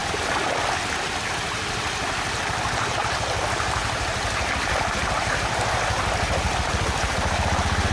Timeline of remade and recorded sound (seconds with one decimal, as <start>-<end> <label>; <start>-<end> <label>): 0.0-3.8 recorded; 3.8-5.6 remade; 5.6-7.9 recorded